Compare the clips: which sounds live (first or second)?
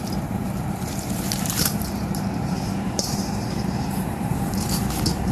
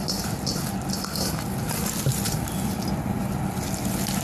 second